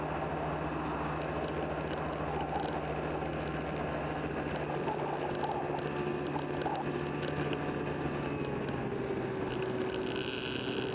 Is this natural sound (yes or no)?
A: yes